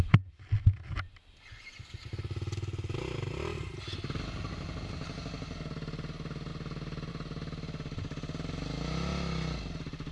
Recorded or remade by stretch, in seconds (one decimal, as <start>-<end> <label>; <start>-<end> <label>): 0.0-10.1 recorded